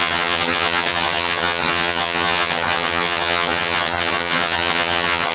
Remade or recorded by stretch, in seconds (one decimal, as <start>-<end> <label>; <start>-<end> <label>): 0.0-5.3 remade